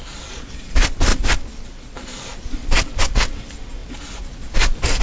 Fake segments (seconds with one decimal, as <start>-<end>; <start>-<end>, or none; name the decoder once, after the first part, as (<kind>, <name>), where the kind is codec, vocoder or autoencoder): 1.1-3.0 (vocoder, BigVGAN v2)